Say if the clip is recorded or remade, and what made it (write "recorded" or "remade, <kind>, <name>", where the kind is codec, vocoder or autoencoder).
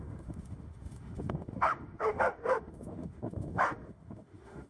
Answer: remade, autoencoder, DAC-VAE